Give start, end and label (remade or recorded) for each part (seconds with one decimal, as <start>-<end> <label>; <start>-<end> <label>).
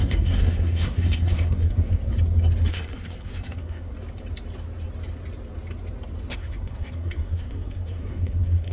0.0-2.1 remade; 2.1-2.7 recorded; 2.7-3.9 remade; 3.9-6.3 recorded; 6.3-8.7 remade